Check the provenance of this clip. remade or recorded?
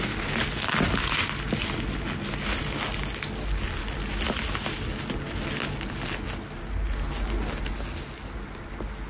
recorded